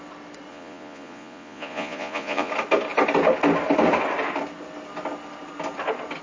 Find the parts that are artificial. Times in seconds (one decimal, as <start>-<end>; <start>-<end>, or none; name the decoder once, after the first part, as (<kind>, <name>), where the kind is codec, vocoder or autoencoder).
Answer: 0.5-2.5 (vocoder, Vocos)